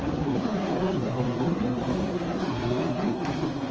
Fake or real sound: fake